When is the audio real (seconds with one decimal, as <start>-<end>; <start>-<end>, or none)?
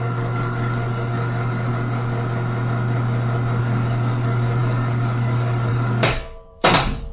1.7-3.6